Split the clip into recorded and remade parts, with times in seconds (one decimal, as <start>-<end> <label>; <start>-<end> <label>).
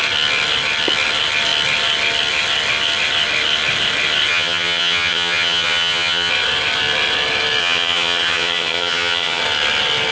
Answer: 0.0-4.3 recorded; 4.3-6.3 remade; 6.3-7.6 recorded; 7.6-9.4 remade; 9.4-10.1 recorded